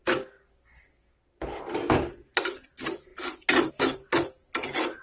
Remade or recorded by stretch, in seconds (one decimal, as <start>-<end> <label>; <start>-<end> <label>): 0.0-5.0 recorded